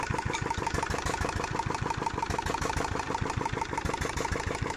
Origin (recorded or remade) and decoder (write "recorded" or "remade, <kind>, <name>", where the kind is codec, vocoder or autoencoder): recorded